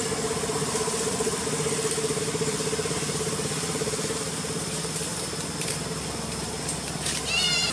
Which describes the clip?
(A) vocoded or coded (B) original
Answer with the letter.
B